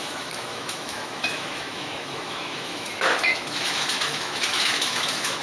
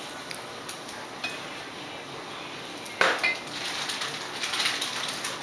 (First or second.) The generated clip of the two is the first